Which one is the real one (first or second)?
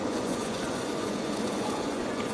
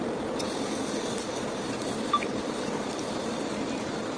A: second